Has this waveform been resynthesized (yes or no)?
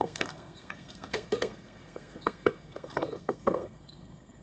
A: yes